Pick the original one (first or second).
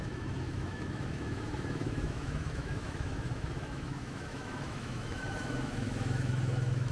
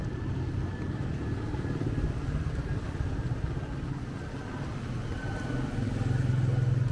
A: second